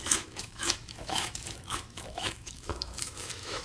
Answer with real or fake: fake